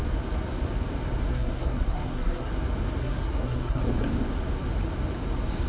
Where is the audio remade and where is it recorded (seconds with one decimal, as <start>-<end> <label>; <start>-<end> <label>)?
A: 0.0-1.3 recorded; 1.3-2.5 remade; 2.5-3.0 recorded; 3.0-3.8 remade; 3.8-5.7 recorded